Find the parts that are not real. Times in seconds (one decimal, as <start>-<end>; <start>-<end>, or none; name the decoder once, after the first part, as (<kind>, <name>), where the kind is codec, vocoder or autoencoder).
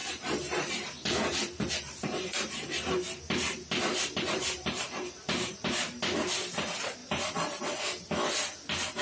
0.0-3.2 (vocoder, BigVGAN v2); 3.9-6.0; 7.0-7.6